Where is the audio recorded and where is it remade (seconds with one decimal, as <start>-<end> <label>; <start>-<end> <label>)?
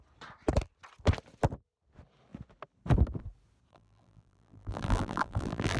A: 0.0-3.7 recorded; 3.7-5.8 remade